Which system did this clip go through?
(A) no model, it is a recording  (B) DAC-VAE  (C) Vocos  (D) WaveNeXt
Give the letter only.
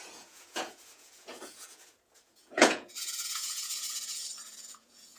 C